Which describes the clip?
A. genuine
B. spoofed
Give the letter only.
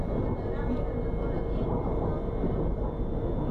A